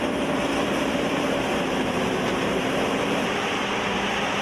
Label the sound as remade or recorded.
remade